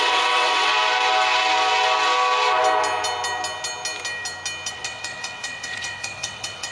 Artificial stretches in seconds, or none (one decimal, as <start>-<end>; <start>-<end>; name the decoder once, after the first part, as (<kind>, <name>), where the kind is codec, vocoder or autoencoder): 0.0-0.7 (vocoder, WaveNeXt); 4.7-6.7